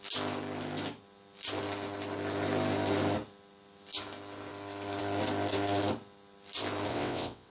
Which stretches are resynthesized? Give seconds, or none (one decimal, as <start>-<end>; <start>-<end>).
6.9-7.5